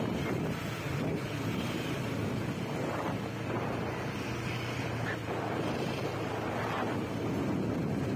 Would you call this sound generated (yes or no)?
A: no